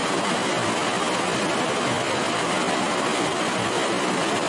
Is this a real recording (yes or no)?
yes